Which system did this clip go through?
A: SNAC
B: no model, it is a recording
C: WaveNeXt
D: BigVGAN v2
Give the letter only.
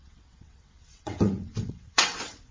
C